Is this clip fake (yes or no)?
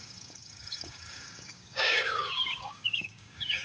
yes